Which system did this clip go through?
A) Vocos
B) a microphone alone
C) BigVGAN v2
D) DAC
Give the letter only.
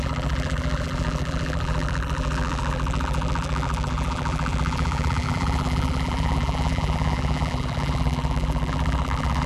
C